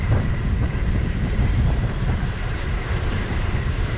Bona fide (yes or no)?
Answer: no